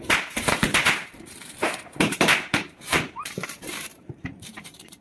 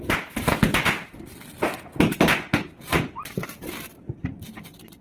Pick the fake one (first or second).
first